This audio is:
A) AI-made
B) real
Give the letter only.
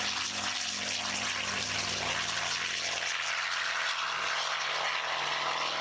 B